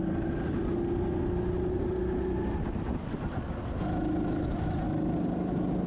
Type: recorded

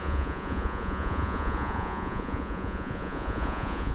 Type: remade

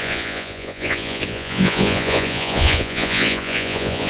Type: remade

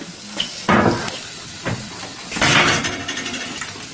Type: recorded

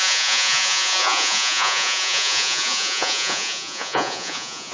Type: remade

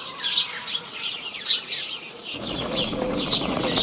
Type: remade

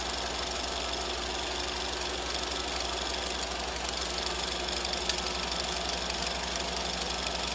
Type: recorded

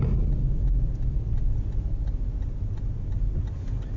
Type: recorded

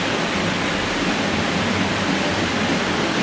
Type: recorded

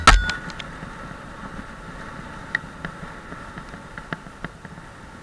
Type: recorded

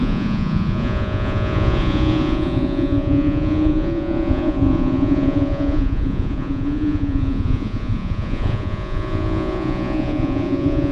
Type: remade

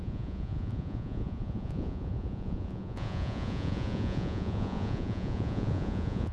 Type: remade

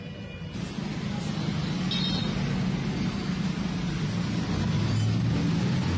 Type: recorded